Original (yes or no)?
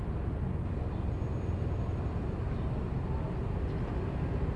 yes